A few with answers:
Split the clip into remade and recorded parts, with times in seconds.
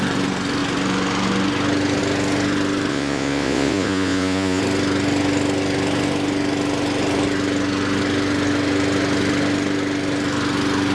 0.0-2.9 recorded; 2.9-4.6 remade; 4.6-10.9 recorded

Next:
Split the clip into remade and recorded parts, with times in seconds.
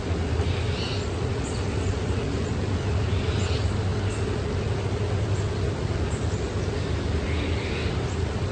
0.0-8.5 recorded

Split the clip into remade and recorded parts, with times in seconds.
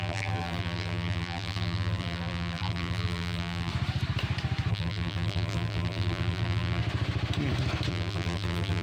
0.0-3.7 remade; 3.7-4.7 recorded; 4.7-6.8 remade; 6.8-7.9 recorded; 7.9-8.8 remade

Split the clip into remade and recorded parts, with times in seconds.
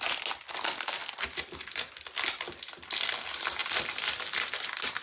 0.0-5.0 recorded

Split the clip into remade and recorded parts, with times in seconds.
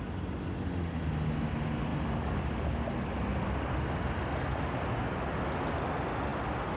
0.0-6.8 recorded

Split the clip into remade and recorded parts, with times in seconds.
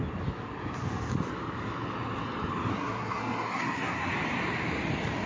0.0-2.7 recorded; 2.7-4.1 remade; 4.1-5.3 recorded